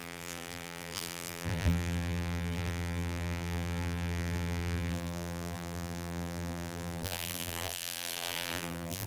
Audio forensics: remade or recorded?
remade